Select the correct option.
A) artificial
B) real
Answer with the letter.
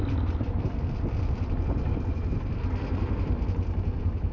B